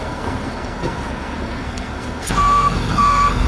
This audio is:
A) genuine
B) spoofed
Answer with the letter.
B